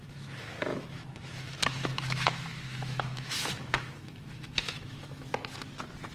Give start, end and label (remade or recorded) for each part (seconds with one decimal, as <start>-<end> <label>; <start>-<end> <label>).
0.0-5.3 remade; 5.3-6.1 recorded